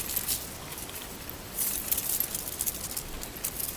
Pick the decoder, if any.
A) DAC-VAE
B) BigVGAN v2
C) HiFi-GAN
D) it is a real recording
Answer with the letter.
D